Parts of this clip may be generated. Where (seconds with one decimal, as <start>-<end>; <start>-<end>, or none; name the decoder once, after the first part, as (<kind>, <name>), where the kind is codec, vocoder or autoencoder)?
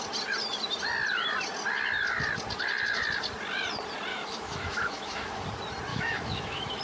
4.1-5.4 (autoencoder, DAC-VAE); 5.9-6.8